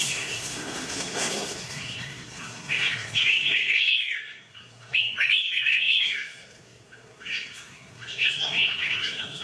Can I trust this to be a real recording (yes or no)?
no